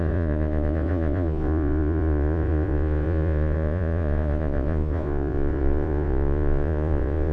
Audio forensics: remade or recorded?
remade